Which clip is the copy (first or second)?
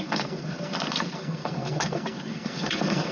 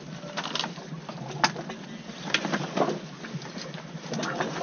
first